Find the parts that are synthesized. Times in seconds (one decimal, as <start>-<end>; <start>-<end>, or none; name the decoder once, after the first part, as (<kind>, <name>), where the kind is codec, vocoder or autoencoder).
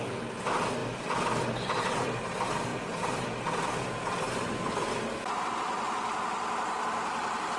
none